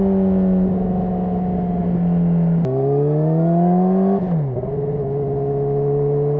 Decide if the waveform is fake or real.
real